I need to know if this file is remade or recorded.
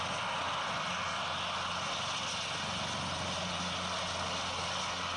recorded